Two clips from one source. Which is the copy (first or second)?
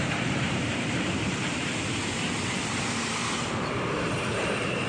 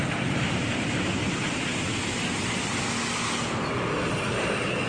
first